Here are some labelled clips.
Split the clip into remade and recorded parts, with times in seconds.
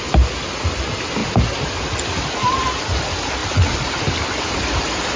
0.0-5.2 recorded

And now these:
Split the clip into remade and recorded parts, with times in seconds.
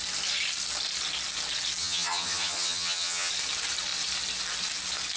0.0-1.8 recorded; 1.8-3.3 remade; 3.3-5.2 recorded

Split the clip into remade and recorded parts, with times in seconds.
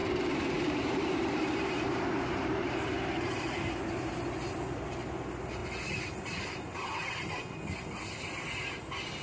0.0-3.2 remade; 3.2-9.2 recorded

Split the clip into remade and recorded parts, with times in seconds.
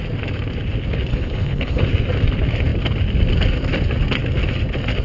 0.0-1.1 recorded; 1.1-1.8 remade; 1.8-5.0 recorded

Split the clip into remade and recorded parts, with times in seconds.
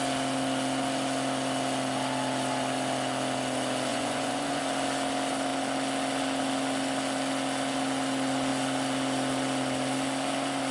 0.0-3.9 recorded; 3.9-4.6 remade; 4.6-10.7 recorded